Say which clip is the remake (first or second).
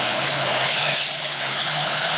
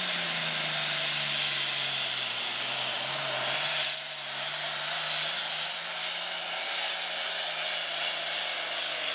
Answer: first